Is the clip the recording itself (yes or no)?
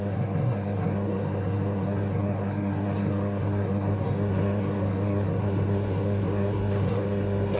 no